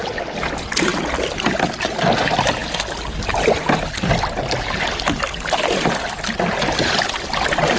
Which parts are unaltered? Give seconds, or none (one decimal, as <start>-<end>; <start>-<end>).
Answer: 0.0-7.8